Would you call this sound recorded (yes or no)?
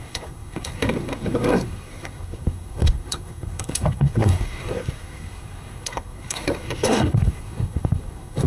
no